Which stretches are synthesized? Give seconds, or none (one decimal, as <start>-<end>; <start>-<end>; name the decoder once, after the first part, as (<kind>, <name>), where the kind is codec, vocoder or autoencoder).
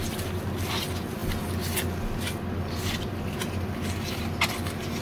none